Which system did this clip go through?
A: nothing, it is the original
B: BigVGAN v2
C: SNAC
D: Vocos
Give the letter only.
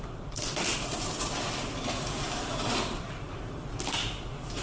A